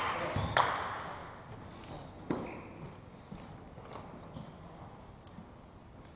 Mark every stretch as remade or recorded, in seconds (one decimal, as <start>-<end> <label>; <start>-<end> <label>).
0.0-6.2 recorded